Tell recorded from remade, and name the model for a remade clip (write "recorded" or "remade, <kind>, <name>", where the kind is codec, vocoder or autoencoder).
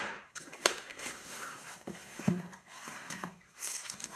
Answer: remade, codec, SNAC